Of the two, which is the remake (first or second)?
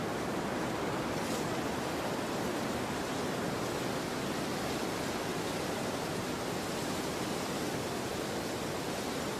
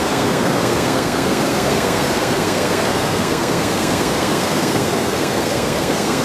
second